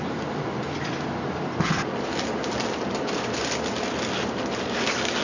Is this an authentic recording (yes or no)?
yes